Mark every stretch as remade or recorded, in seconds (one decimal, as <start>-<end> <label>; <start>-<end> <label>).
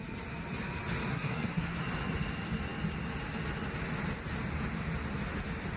0.0-1.1 recorded; 1.1-1.8 remade; 1.8-5.8 recorded